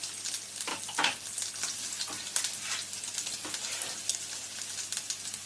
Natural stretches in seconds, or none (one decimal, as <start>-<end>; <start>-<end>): 0.0-5.5